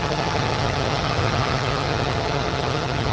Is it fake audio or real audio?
fake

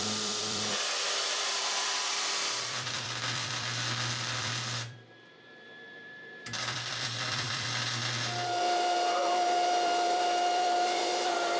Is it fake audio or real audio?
fake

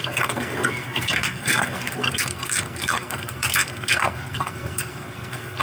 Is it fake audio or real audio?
fake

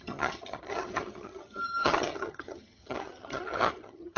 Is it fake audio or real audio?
fake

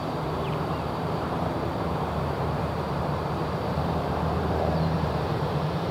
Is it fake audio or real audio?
fake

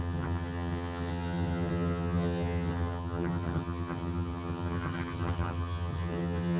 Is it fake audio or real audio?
fake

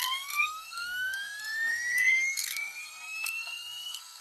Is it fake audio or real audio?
fake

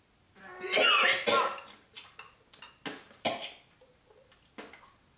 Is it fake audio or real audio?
real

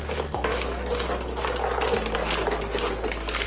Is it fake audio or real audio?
real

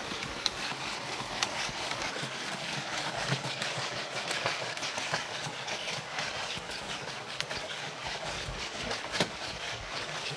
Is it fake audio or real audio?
fake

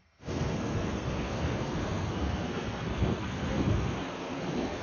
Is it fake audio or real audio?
fake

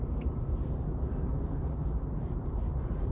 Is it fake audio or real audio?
fake